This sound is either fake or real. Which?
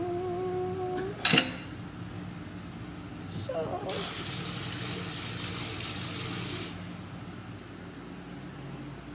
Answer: real